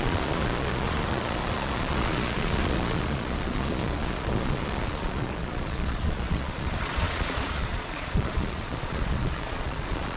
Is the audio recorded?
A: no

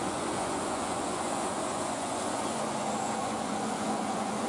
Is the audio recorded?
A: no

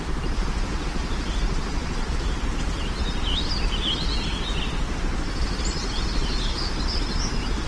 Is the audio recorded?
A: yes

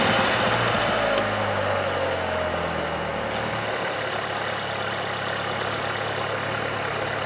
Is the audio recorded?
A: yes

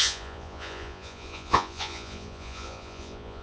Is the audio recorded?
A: no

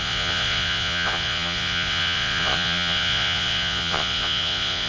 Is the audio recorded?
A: no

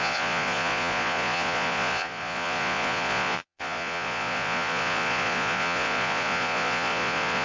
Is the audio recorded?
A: no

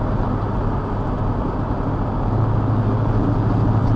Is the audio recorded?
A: yes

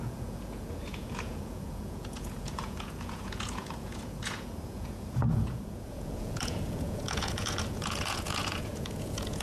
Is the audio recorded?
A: no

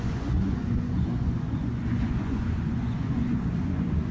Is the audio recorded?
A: no